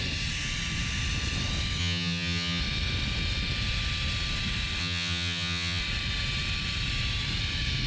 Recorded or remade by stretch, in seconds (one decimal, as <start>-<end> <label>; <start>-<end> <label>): 0.0-1.8 recorded; 1.8-2.6 remade; 2.6-4.8 recorded; 4.8-5.8 remade; 5.8-7.9 recorded